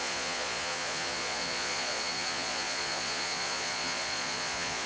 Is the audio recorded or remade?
remade